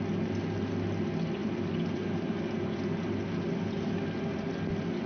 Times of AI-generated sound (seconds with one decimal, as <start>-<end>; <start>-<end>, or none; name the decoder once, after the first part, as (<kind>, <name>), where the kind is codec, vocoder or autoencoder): none